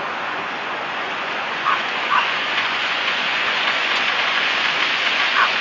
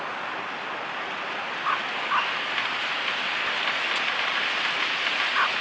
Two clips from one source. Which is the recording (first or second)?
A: second